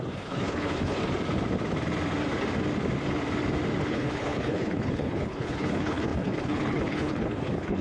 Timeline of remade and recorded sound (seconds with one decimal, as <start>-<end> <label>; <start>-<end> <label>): 0.0-1.0 remade; 1.0-3.9 recorded; 3.9-7.8 remade